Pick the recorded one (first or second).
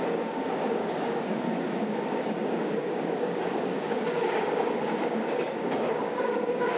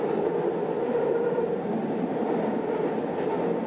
second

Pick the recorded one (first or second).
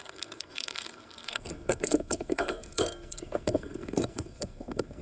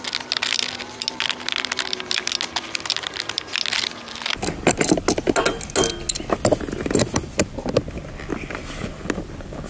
second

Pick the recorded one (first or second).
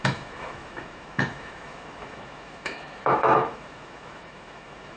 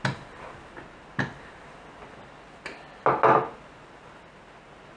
second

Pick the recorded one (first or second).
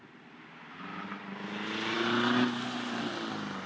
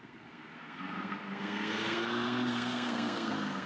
first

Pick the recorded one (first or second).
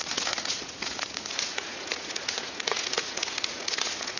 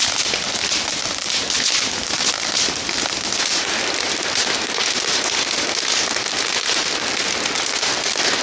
second